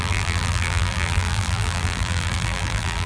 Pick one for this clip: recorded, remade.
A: remade